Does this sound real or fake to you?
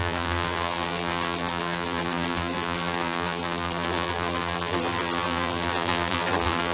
fake